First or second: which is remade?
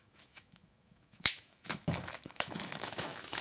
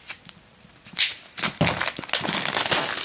first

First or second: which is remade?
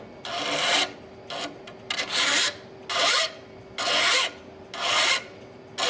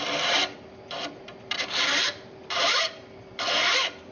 second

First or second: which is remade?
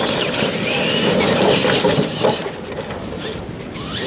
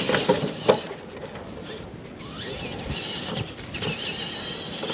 first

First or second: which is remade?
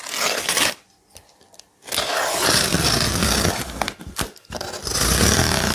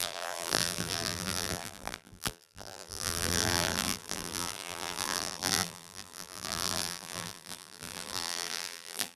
second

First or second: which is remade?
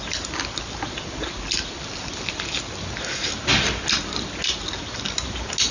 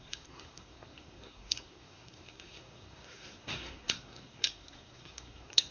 second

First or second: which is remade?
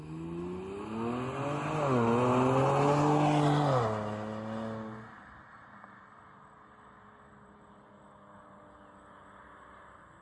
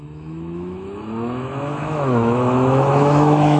second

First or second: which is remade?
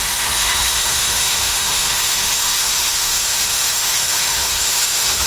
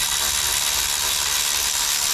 first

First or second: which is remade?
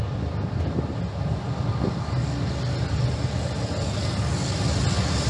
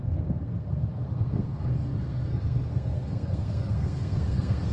second